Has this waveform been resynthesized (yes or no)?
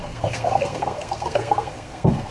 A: yes